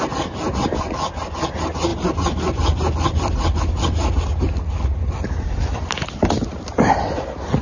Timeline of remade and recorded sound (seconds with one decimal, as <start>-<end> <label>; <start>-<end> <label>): 0.0-7.6 recorded